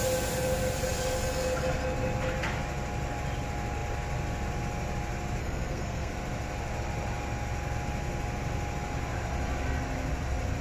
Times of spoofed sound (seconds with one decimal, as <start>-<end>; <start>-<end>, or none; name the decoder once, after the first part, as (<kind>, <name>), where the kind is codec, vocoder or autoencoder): 5.4-6.1 (codec, SNAC)